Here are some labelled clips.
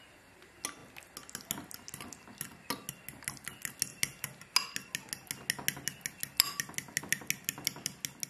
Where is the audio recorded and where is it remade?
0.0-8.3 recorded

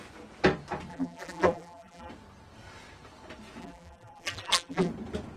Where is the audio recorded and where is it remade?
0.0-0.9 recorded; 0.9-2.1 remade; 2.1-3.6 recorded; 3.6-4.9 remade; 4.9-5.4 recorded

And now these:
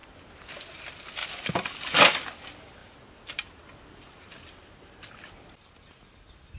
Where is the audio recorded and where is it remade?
0.0-1.2 recorded; 1.2-2.3 remade; 2.3-2.8 recorded; 2.8-5.7 remade; 5.7-6.6 recorded

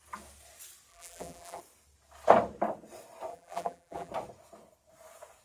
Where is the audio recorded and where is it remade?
0.0-0.9 recorded; 0.9-1.6 remade; 1.6-3.3 recorded; 3.3-4.1 remade; 4.1-5.4 recorded